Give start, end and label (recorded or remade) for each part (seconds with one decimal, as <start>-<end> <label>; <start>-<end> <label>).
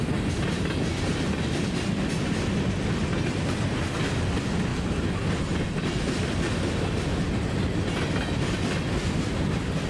0.0-9.9 recorded